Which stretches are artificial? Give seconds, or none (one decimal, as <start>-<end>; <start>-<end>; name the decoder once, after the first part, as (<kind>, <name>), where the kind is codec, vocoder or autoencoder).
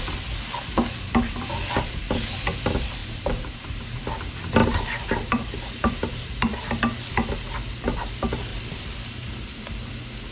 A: 3.0-4.0 (vocoder, BigVGAN v2); 4.6-6.6; 8.5-9.9